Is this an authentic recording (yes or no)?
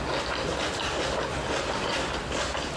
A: yes